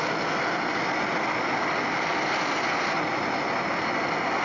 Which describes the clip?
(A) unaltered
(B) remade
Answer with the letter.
A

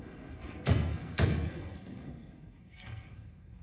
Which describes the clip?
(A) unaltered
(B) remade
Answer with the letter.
B